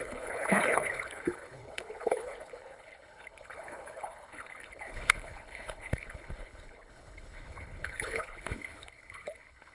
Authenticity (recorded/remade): remade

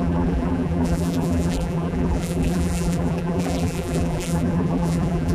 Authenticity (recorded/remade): remade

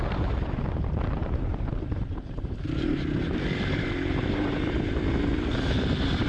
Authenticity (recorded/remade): remade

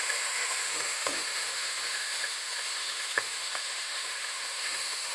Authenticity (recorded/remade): remade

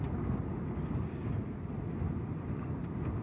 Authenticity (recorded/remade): recorded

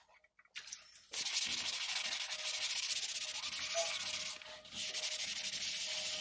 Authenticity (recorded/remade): recorded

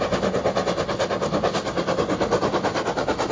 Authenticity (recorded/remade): recorded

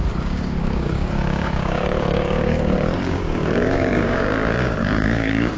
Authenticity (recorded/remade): remade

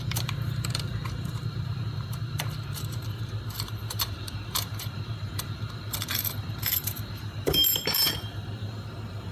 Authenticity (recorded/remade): remade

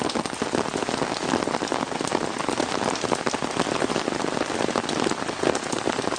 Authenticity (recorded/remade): recorded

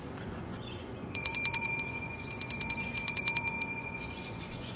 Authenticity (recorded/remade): remade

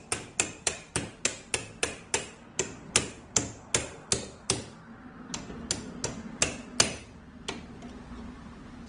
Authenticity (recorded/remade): recorded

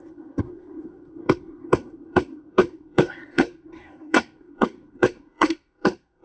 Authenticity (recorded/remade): remade